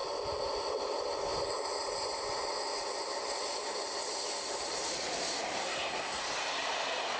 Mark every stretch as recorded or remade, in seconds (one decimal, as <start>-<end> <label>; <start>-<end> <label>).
0.0-5.6 recorded; 5.6-6.2 remade; 6.2-7.2 recorded